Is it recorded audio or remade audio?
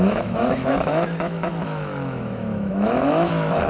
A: remade